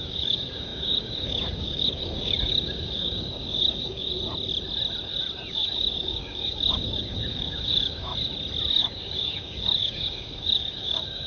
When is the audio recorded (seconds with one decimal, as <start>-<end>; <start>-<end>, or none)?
4.1-5.5; 8.1-8.7

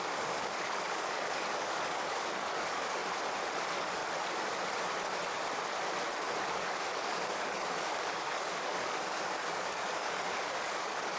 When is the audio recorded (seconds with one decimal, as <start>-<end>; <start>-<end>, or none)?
3.0-3.6; 4.0-6.4